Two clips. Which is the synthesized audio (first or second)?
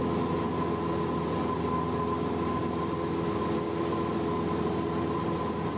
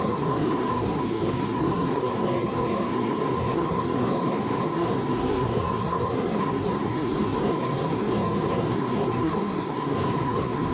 second